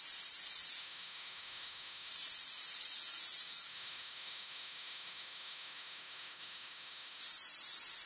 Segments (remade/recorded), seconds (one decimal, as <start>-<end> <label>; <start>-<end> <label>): 0.0-0.8 recorded; 0.8-2.1 remade; 2.1-3.7 recorded; 3.7-7.2 remade; 7.2-8.1 recorded